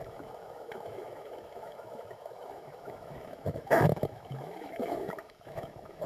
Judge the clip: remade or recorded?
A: remade